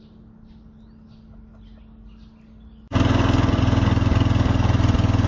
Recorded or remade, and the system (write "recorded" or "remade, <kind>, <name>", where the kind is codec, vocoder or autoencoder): recorded